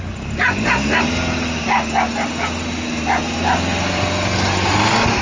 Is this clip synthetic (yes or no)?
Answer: no